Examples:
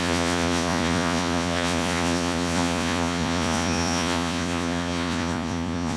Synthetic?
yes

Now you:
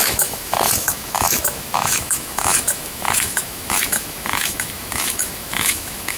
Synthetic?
yes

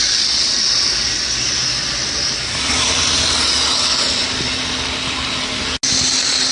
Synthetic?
no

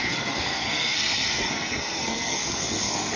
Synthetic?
yes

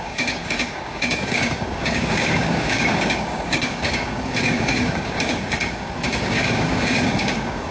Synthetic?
yes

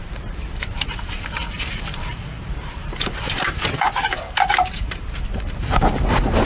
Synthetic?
yes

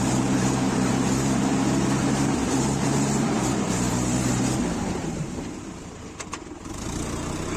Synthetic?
yes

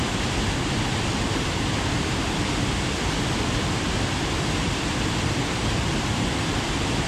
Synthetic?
no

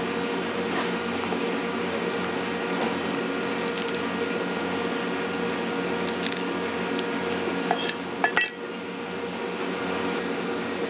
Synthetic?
no